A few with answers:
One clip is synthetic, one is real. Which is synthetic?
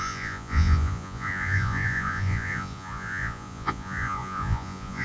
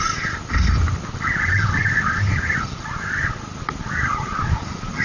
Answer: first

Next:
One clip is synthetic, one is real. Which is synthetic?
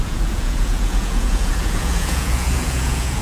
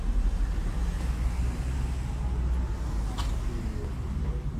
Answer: first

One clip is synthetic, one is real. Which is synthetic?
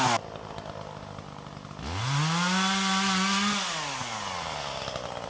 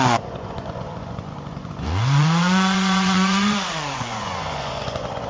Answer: second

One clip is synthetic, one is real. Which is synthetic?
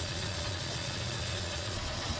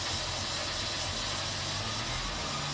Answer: first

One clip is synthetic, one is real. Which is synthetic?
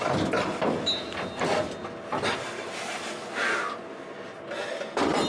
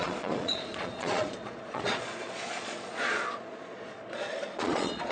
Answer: second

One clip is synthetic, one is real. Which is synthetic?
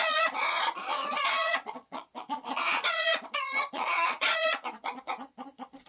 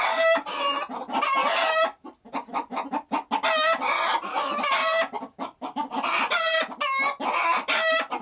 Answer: first